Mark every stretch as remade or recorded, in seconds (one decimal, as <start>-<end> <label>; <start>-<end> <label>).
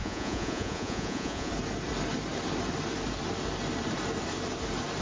0.0-1.5 remade; 1.5-5.0 recorded